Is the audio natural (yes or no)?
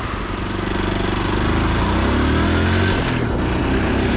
yes